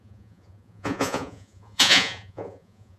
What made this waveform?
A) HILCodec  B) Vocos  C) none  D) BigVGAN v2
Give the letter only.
B